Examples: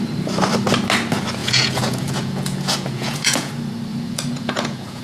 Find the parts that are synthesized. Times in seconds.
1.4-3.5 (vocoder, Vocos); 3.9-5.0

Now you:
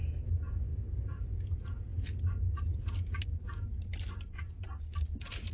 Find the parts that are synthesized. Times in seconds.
none

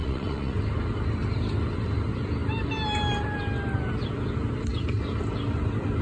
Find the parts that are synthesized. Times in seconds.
0.0-0.6 (vocoder, Vocos)

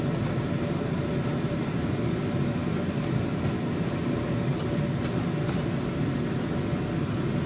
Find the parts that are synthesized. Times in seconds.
1.3-1.9 (vocoder, BigVGAN v2); 2.6-3.5

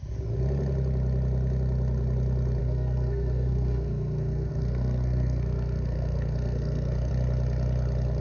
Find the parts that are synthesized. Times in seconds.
2.6-7.1 (codec, SNAC)

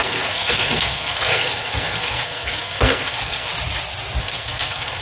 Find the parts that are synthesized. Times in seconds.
0.0-3.5 (codec, SNAC); 4.2-5.0

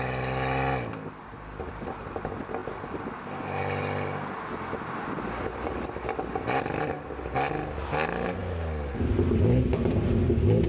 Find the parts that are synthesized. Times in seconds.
none